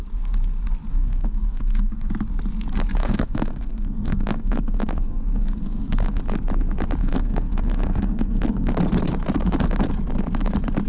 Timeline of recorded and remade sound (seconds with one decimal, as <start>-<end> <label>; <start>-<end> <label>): 0.0-0.9 recorded; 0.9-2.1 remade; 2.1-3.0 recorded; 3.0-6.2 remade; 6.2-7.0 recorded; 7.0-8.7 remade; 8.7-10.9 recorded